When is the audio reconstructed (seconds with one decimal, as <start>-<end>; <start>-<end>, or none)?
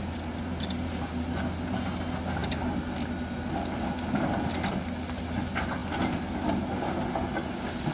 none